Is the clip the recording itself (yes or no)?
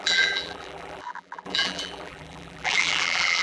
no